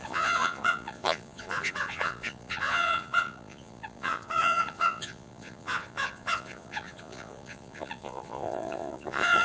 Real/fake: fake